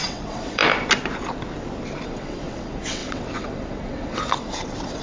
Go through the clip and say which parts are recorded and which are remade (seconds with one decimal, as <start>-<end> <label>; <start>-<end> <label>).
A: 0.0-0.6 remade; 0.6-2.0 recorded; 2.0-5.0 remade